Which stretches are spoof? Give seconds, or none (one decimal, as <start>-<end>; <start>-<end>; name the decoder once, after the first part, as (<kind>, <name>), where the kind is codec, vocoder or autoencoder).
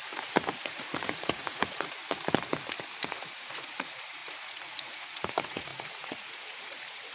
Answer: 0.0-2.0 (vocoder, Vocos); 3.1-7.1